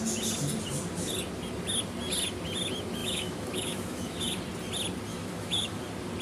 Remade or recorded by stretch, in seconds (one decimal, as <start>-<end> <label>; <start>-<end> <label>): 0.0-3.0 recorded; 3.0-4.4 remade; 4.4-5.1 recorded; 5.1-5.8 remade; 5.8-6.2 recorded